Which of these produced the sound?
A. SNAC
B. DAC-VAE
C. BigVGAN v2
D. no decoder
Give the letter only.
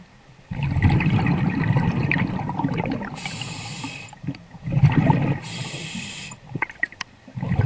C